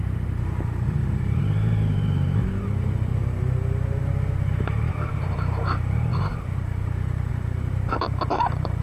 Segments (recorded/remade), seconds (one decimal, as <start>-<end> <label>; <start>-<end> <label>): 0.0-3.1 remade; 3.1-4.9 recorded; 4.9-8.8 remade